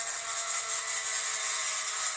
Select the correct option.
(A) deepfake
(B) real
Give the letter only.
B